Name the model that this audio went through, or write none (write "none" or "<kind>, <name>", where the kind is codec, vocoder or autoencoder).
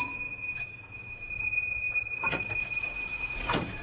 vocoder, Vocos